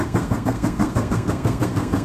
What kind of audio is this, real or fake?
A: fake